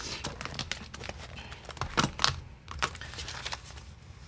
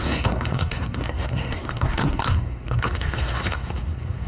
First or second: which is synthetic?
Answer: second